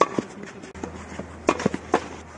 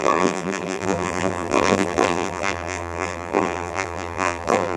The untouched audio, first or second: first